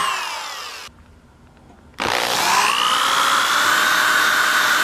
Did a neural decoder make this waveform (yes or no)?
no